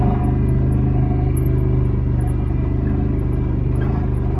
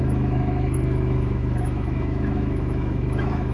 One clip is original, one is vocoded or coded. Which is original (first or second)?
first